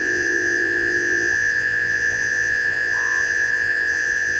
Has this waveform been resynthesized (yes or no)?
yes